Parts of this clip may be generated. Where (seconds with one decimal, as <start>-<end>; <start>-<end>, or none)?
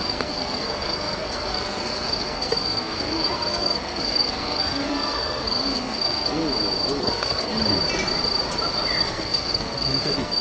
0.0-6.4; 7.0-7.5; 9.0-10.4